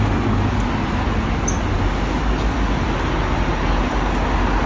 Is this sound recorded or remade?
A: recorded